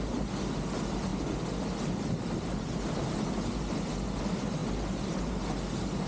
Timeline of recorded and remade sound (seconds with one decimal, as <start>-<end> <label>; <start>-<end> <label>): 0.0-6.1 recorded